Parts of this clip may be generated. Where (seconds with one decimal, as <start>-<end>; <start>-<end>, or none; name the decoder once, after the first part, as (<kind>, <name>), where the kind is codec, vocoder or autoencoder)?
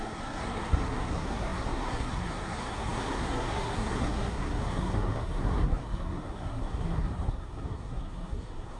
0.0-8.8 (codec, SNAC)